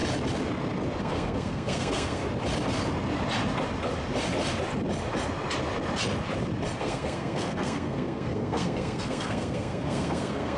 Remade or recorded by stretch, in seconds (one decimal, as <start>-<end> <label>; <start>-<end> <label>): 0.0-1.0 recorded; 1.0-2.2 remade; 2.2-6.8 recorded; 6.8-10.6 remade